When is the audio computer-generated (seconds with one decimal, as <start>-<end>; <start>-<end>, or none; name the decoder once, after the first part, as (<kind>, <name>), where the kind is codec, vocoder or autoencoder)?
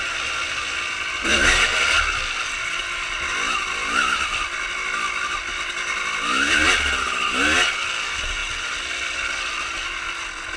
none